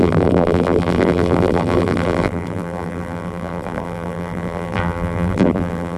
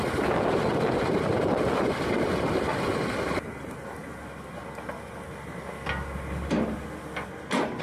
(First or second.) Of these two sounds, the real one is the second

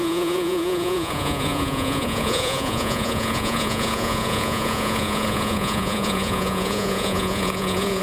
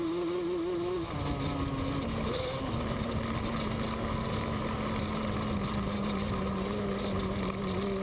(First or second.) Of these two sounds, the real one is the second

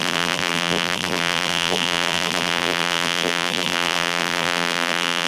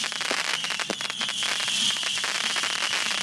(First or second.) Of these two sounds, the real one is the second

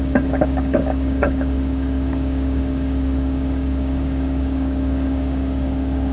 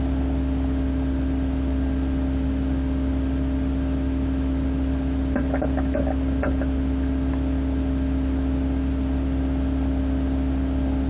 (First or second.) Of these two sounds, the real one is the second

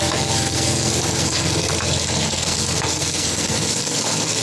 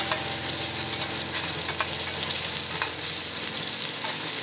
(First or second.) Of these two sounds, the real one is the second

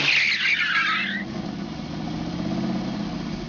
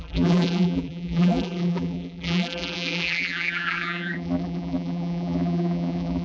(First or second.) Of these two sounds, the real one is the first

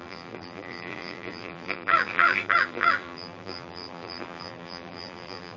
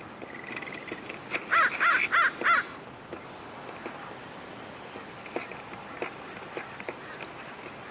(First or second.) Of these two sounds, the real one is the second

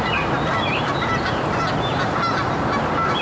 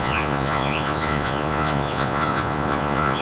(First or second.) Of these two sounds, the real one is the first